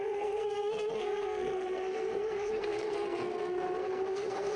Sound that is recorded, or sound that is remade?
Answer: remade